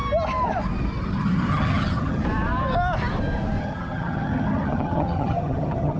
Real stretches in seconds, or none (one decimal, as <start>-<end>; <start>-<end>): 0.0-1.5; 2.2-3.6